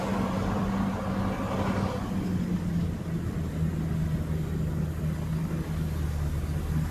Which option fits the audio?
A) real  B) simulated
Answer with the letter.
A